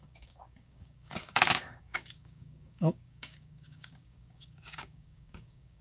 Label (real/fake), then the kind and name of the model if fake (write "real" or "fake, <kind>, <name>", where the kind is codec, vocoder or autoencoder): fake, codec, DAC